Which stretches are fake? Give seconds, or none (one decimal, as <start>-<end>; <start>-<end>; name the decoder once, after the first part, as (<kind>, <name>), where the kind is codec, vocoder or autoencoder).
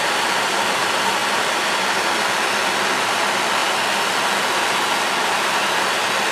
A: none